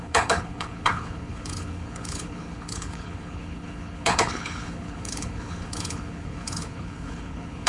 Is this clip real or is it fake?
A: fake